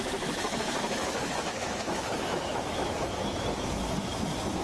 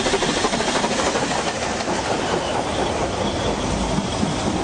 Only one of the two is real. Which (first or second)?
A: second